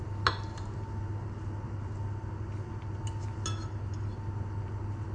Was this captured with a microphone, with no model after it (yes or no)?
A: yes